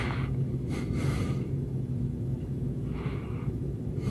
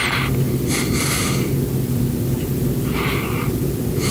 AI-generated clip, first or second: first